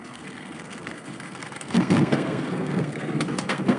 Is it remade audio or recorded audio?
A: remade